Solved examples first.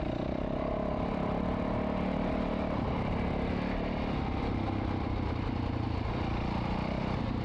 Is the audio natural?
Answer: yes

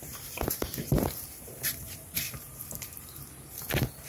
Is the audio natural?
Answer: no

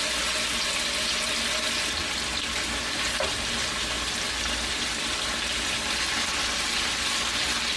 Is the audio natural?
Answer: yes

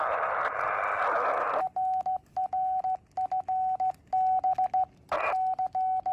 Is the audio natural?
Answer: yes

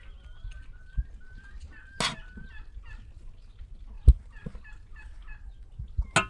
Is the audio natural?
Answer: yes